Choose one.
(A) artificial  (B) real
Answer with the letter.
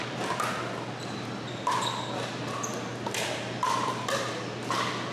B